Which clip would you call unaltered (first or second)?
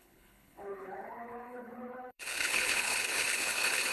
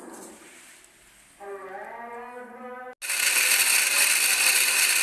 second